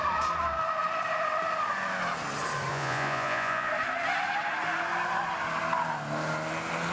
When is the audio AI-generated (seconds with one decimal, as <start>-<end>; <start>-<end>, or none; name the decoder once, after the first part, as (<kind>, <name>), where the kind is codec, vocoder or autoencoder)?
2.7-3.7 (vocoder, Vocos)